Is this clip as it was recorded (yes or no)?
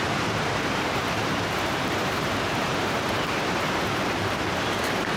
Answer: no